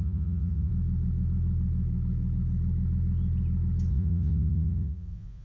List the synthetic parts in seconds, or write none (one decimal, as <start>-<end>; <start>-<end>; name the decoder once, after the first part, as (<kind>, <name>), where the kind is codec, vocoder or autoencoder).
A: 0.0-0.7 (vocoder, Vocos); 3.9-5.4